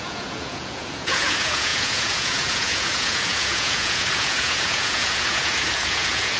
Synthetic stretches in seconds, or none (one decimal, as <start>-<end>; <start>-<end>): 0.0-6.4